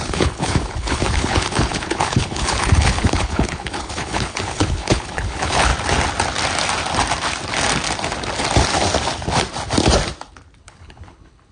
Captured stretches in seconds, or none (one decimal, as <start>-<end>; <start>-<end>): 5.7-10.6